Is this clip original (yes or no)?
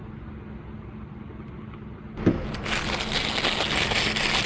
yes